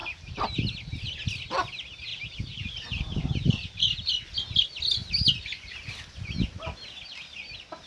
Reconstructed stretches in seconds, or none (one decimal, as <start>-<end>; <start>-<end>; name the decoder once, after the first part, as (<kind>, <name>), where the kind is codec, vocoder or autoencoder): 0.0-0.6 (vocoder, BigVGAN v2); 2.1-4.1; 5.0-5.9